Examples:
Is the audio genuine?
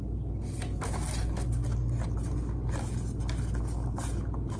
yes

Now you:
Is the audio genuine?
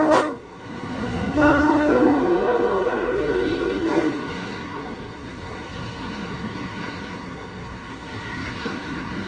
no